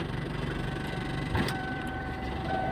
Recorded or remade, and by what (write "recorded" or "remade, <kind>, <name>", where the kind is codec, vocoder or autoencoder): remade, vocoder, BigVGAN v2